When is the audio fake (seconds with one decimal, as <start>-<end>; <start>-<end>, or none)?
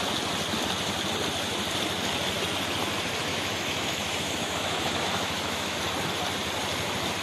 3.3-5.8